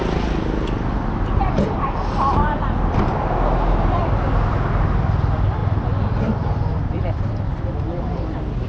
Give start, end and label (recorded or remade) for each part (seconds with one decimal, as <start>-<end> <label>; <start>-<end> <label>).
0.0-5.6 recorded; 5.6-7.7 remade; 7.7-8.7 recorded